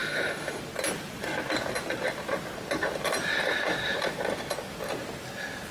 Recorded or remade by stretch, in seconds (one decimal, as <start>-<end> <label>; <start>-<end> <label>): 0.0-0.6 remade; 0.6-5.7 recorded